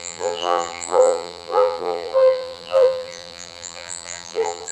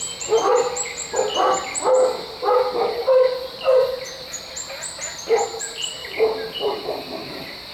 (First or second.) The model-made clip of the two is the first